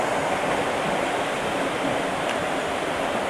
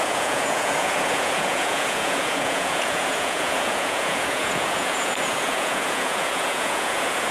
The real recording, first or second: first